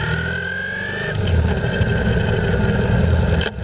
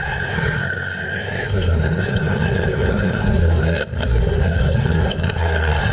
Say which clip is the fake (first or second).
second